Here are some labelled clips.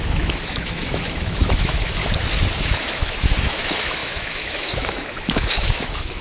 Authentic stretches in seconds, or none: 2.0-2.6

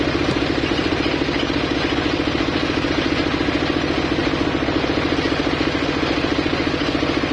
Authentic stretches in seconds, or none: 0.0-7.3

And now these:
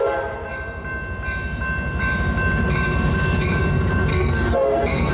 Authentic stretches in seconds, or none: 0.0-4.1

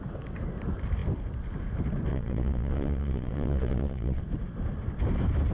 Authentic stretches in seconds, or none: 0.0-2.1; 4.2-5.5